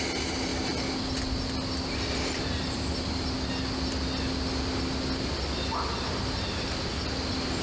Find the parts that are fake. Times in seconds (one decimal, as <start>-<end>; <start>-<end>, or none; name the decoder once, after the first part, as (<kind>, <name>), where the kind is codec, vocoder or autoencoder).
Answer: none